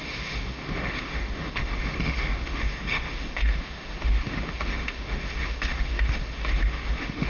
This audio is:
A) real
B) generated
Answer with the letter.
B